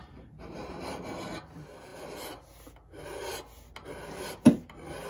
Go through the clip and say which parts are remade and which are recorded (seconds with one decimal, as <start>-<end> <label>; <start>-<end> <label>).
0.0-5.1 recorded